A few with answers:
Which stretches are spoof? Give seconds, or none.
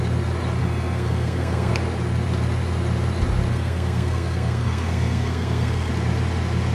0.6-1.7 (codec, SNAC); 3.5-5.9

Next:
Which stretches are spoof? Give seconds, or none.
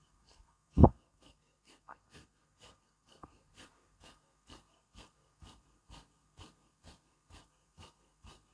0.0-8.5 (codec, SNAC)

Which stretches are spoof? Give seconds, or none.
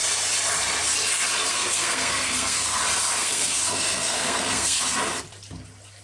1.5-2.8 (codec, SNAC); 3.2-4.8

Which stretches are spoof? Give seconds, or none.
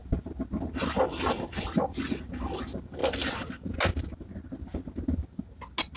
none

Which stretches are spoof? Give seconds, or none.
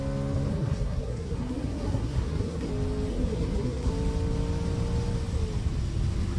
0.5-2.7 (codec, SNAC); 3.1-3.9